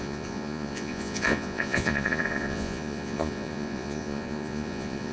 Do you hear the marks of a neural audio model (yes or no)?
yes